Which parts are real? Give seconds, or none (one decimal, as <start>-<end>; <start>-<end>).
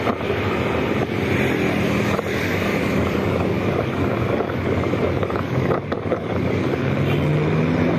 0.0-2.3; 6.9-8.0